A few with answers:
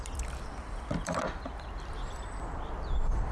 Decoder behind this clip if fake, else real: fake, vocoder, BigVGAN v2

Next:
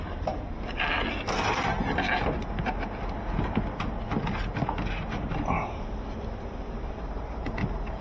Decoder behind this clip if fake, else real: real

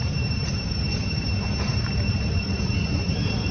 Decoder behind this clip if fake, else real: fake, vocoder, BigVGAN v2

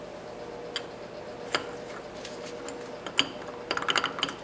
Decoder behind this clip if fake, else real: real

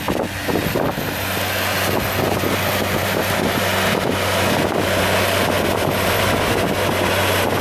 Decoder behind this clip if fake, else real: real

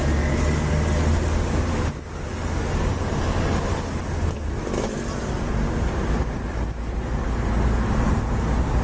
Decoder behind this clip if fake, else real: real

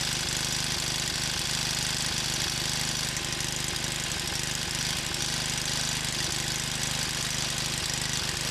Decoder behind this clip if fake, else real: real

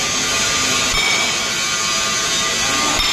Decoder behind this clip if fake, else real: real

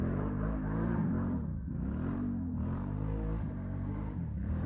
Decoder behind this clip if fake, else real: fake, vocoder, BigVGAN v2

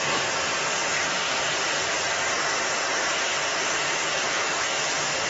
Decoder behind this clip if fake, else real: fake, vocoder, BigVGAN v2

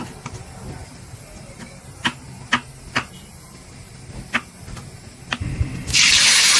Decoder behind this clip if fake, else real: real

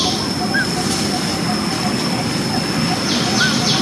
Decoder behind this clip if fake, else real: real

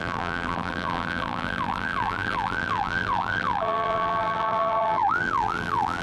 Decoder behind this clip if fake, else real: fake, vocoder, BigVGAN v2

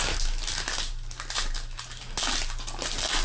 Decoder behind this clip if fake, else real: real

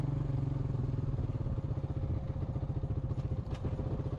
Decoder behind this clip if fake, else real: real